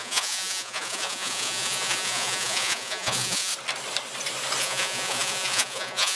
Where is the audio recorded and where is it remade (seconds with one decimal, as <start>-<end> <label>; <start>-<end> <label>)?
0.0-3.5 remade; 3.5-4.6 recorded; 4.6-6.1 remade